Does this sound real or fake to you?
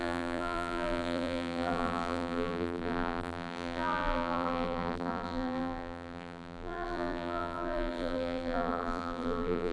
fake